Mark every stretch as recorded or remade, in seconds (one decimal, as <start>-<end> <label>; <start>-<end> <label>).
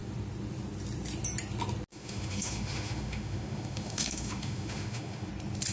0.0-1.9 recorded; 1.9-5.3 remade; 5.3-5.7 recorded